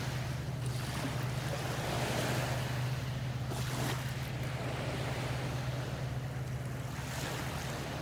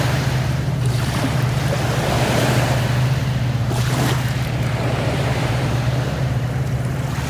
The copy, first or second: second